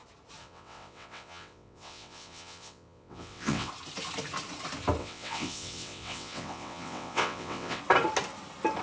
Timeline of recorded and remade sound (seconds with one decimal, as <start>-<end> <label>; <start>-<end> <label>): 0.0-0.4 recorded; 0.4-3.7 remade; 3.7-5.0 recorded; 5.0-7.8 remade; 7.8-8.8 recorded